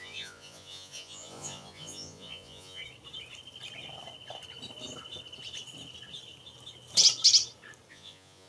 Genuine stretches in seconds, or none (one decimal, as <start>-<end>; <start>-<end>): 2.8-7.9